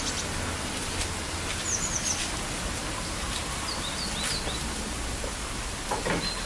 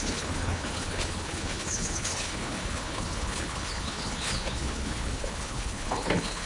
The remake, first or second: second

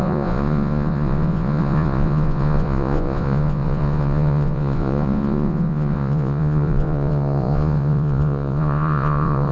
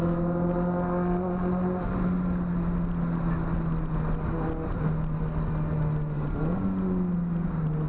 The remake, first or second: first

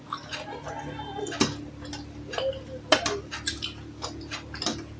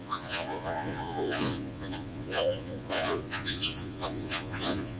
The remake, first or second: second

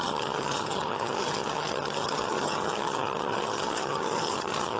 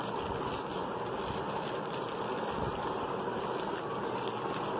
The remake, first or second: first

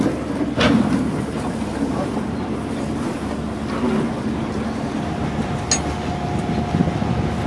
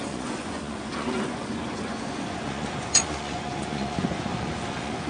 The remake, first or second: second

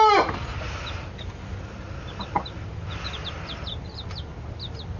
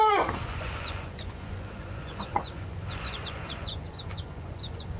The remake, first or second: second